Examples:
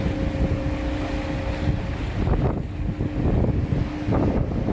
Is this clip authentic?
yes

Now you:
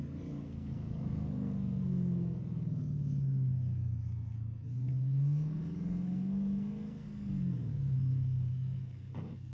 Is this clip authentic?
no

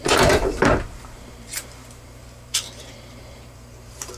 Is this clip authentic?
no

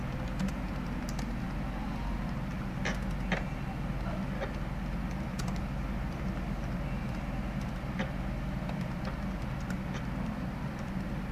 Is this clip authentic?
yes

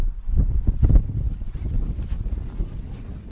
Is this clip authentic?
yes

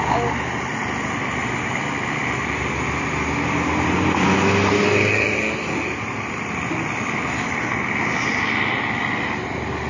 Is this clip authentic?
yes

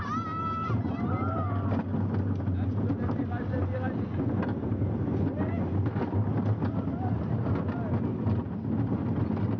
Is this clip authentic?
yes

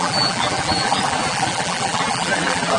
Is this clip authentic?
no